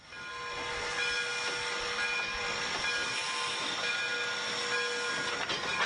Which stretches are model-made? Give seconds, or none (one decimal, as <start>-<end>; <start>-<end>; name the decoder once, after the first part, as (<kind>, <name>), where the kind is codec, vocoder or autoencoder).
none

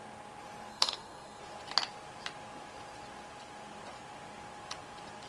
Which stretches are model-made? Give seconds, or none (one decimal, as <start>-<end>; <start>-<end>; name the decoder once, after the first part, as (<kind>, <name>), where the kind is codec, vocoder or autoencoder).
0.7-1.4 (codec, SNAC)

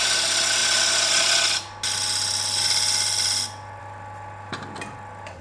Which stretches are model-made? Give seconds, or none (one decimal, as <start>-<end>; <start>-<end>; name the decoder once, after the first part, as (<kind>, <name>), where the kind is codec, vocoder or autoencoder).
none

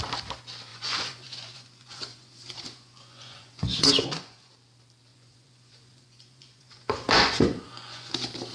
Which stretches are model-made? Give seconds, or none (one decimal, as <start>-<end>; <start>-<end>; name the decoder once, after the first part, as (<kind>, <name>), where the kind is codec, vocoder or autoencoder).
0.7-4.5 (vocoder, Vocos); 5.1-8.1

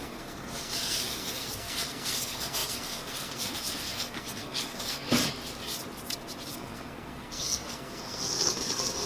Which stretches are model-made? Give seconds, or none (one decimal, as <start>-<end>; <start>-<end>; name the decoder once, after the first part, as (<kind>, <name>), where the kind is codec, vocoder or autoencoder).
0.0-5.2 (codec, SNAC); 6.5-9.1